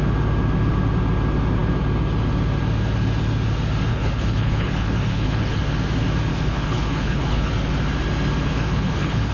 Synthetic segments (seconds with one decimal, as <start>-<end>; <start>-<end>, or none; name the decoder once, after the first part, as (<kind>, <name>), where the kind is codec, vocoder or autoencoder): 3.9-5.6 (codec, HILCodec); 6.3-7.5; 8.5-9.3